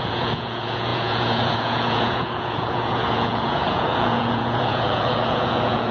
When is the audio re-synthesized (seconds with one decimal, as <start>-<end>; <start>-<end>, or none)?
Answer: 0.0-5.9

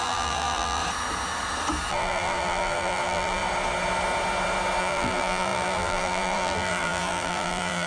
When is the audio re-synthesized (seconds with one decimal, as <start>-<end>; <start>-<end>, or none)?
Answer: 0.0-0.8; 1.9-3.4; 4.8-7.9

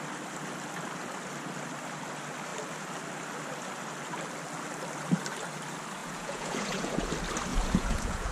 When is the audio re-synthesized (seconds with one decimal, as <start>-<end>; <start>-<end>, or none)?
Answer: 6.0-7.1; 7.5-8.3

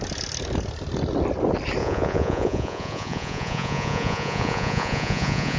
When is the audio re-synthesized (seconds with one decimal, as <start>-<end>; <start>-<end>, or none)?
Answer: 1.8-5.6

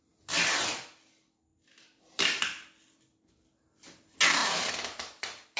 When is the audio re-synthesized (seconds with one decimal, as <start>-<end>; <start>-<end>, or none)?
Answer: 4.4-5.6

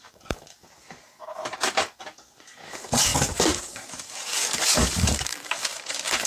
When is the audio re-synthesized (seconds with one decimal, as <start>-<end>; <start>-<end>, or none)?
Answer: 0.0-6.3